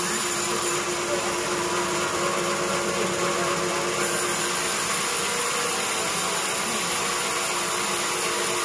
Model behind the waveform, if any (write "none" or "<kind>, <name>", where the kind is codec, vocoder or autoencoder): none